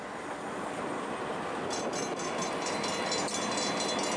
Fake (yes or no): no